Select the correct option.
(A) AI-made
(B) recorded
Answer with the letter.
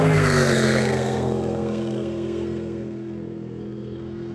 A